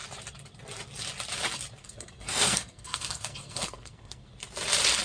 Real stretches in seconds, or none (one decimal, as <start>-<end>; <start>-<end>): 0.0-1.8; 4.3-5.0